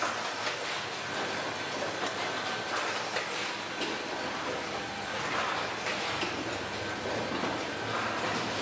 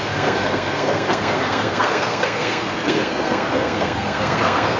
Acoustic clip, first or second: first